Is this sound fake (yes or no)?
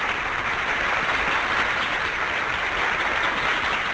no